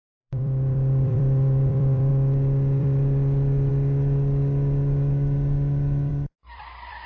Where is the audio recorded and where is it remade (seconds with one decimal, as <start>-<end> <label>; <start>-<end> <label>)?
0.0-2.1 remade; 2.1-2.8 recorded; 2.8-3.7 remade; 3.7-6.1 recorded; 6.1-7.1 remade